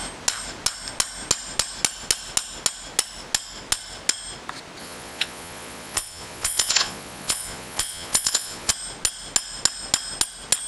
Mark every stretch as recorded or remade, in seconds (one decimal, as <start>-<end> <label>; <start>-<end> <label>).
0.0-4.8 recorded; 4.8-8.7 remade; 8.7-10.7 recorded